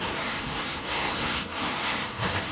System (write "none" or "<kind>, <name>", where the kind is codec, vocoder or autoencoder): codec, SNAC